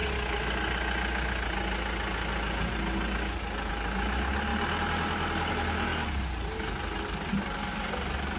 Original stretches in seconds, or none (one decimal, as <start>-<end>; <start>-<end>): 0.0-8.4